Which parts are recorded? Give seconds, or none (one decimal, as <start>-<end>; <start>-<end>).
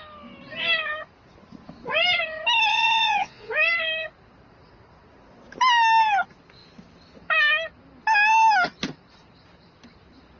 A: 0.0-2.7; 3.5-10.4